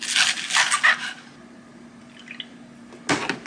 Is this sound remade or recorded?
recorded